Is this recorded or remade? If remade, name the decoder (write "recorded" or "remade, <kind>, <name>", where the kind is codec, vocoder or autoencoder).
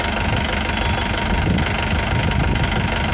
recorded